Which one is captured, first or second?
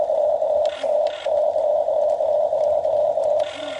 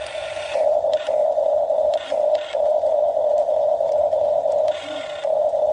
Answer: first